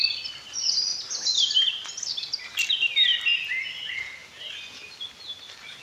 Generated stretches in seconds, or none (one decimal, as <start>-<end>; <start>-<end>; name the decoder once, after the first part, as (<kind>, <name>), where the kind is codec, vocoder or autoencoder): none